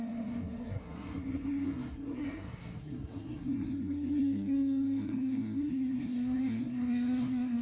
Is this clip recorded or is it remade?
remade